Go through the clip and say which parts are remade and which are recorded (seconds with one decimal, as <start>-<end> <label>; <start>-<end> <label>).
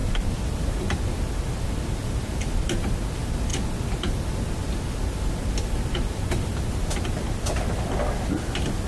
0.0-8.9 recorded